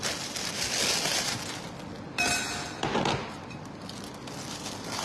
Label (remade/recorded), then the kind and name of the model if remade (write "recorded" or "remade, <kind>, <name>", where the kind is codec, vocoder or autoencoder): recorded